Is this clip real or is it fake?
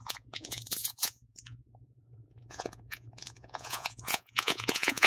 fake